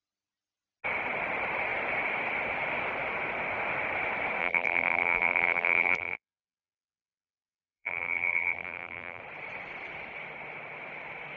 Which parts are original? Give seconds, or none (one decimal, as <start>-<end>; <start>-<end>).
0.0-4.4; 9.2-11.4